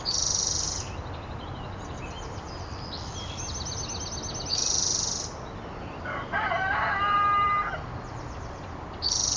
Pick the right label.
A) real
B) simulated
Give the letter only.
A